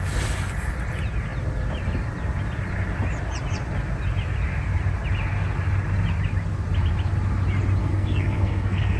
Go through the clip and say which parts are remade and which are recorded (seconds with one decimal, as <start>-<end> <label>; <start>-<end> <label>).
0.0-7.8 recorded; 7.8-9.0 remade